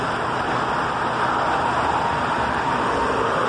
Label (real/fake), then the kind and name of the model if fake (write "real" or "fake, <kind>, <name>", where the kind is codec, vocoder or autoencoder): real